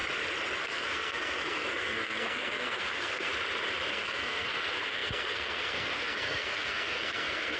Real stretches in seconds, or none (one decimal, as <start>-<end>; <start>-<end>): 0.0-0.6; 3.3-3.9